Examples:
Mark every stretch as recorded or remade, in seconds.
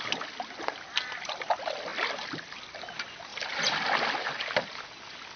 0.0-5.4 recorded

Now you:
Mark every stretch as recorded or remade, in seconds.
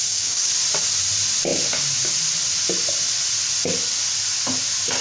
0.0-0.5 remade; 0.5-5.0 recorded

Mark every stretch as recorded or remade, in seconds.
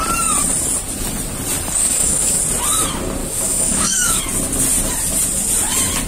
0.0-1.8 recorded; 1.8-2.4 remade; 2.4-3.2 recorded; 3.2-4.2 remade; 4.2-6.1 recorded